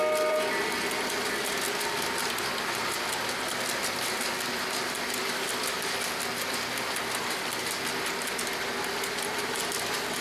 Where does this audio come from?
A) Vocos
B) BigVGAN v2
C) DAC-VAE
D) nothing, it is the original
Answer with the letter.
D